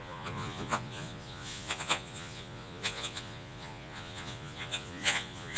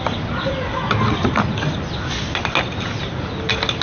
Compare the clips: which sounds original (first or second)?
second